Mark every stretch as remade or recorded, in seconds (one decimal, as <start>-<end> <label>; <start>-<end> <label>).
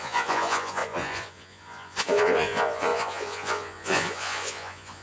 0.0-5.0 remade